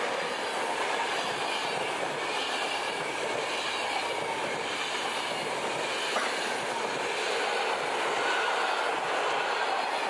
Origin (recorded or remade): recorded